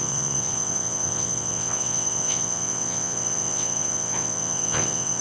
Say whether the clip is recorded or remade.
remade